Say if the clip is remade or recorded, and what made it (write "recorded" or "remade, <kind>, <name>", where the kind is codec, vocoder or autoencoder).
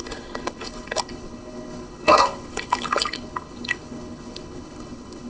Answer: remade, codec, HILCodec